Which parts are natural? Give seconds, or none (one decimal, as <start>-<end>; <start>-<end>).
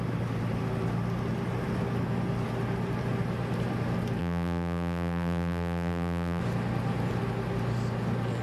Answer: 0.0-4.2; 6.4-8.4